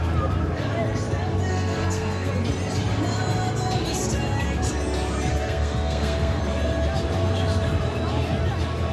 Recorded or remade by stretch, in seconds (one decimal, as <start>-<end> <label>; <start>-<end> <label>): 0.0-1.5 recorded; 1.5-2.3 remade; 2.3-5.3 recorded; 5.3-6.4 remade; 6.4-8.9 recorded